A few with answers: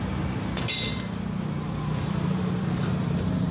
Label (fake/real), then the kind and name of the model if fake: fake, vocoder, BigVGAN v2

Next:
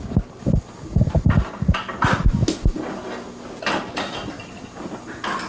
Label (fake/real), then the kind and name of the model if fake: real